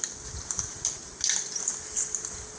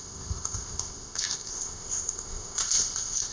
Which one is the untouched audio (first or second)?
first